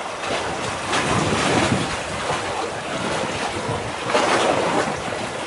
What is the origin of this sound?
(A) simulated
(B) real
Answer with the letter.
B